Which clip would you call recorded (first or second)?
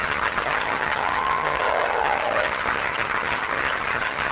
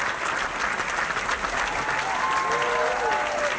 second